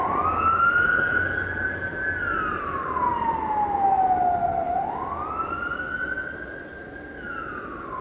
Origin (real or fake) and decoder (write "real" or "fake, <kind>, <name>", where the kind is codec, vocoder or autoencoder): real